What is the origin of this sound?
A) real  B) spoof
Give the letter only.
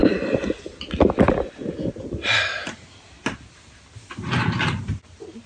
A